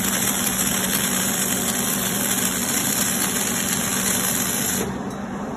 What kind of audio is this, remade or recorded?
remade